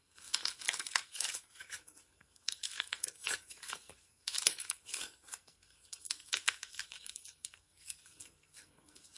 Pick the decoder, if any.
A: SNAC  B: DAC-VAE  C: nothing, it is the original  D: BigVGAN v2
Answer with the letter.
A